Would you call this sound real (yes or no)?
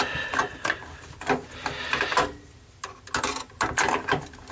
yes